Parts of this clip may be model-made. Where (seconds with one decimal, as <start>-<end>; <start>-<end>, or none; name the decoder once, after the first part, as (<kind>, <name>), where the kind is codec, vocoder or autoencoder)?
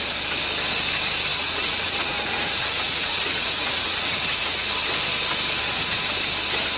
1.3-4.7 (vocoder, Vocos)